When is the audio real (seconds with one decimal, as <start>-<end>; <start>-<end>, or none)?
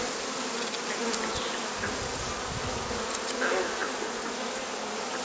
0.0-5.2